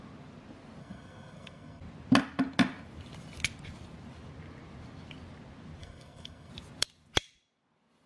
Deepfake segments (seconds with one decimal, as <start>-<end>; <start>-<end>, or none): 0.8-1.8; 5.8-6.5